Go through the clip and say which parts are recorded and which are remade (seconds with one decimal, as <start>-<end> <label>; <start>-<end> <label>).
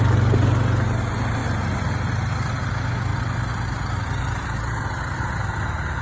0.0-1.4 recorded; 1.4-2.7 remade; 2.7-3.1 recorded; 3.1-4.9 remade; 4.9-6.0 recorded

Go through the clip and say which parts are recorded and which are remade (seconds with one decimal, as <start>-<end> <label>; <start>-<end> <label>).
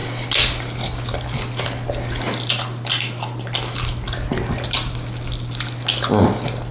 0.0-6.7 recorded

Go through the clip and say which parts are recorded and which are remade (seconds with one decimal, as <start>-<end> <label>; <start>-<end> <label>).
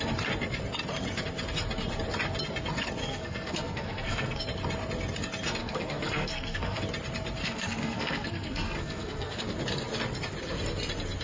0.0-3.0 recorded; 3.0-4.4 remade; 4.4-5.6 recorded; 5.6-6.8 remade; 6.8-7.4 recorded; 7.4-9.4 remade; 9.4-11.2 recorded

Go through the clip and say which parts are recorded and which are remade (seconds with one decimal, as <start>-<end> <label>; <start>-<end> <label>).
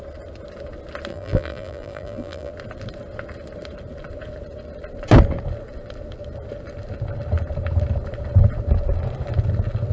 0.0-1.1 recorded; 1.1-2.5 remade; 2.5-9.9 recorded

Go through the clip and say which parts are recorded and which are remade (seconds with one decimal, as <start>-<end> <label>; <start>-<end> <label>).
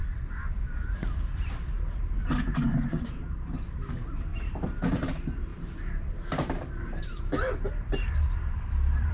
0.0-3.7 remade; 3.7-4.3 recorded; 4.3-4.9 remade; 4.9-5.5 recorded; 5.5-9.1 remade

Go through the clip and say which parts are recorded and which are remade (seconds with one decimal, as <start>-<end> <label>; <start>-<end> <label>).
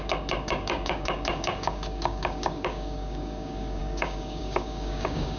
0.0-5.4 remade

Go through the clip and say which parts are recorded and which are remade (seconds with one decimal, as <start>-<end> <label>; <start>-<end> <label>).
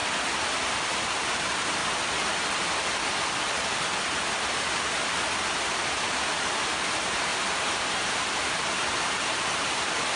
0.0-0.8 recorded; 0.8-1.8 remade; 1.8-5.5 recorded; 5.5-7.3 remade; 7.3-8.4 recorded; 8.4-10.2 remade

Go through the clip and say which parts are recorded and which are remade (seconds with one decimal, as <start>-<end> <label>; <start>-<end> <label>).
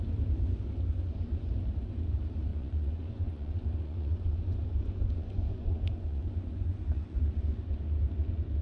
0.0-2.5 recorded; 2.5-7.2 remade; 7.2-8.6 recorded